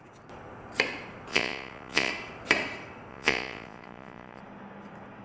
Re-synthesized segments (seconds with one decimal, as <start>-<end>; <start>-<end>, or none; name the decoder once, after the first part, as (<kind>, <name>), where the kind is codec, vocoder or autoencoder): 1.3-2.1 (vocoder, Vocos); 3.1-4.4